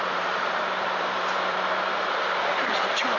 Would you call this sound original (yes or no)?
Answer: no